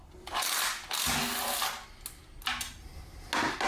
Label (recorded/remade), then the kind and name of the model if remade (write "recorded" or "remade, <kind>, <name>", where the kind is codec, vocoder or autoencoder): recorded